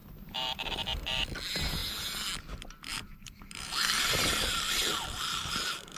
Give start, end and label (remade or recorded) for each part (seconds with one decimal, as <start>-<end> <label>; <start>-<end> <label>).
0.0-1.2 remade; 1.2-2.9 recorded; 2.9-6.0 remade